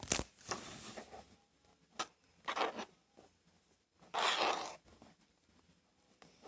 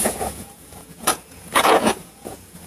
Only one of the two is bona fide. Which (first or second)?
first